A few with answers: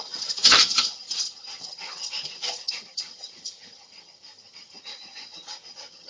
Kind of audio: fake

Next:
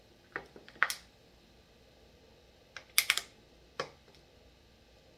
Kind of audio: real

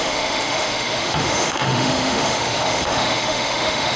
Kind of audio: fake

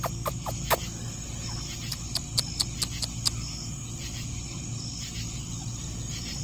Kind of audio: real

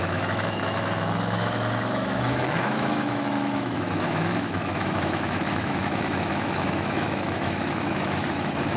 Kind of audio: fake